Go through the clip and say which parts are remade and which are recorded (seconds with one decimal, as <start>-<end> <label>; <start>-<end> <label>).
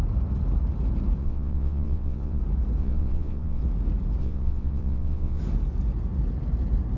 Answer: 0.0-1.2 recorded; 1.2-2.4 remade; 2.4-2.8 recorded; 2.8-3.6 remade; 3.6-4.2 recorded; 4.2-5.4 remade; 5.4-7.0 recorded